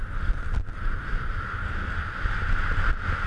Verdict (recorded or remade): recorded